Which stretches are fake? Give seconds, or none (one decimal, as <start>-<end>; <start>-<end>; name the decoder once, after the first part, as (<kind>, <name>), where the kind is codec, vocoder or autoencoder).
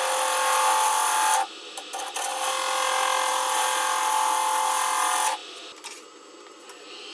none